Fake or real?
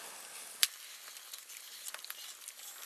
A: real